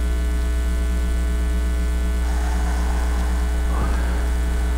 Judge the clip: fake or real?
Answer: real